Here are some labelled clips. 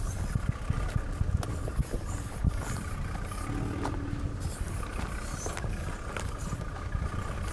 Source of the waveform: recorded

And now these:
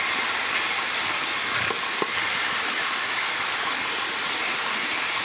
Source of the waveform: recorded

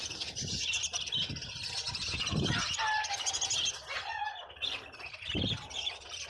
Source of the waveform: recorded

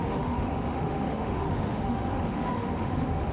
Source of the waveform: remade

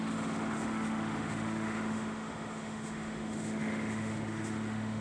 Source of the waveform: remade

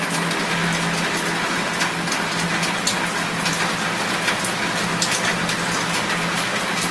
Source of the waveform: recorded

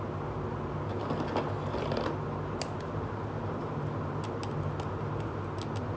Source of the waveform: recorded